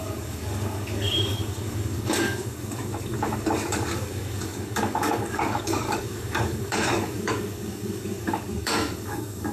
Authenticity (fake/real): fake